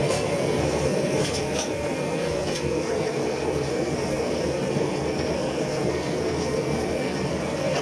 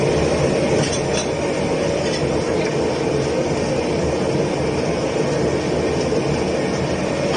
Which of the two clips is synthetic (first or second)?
first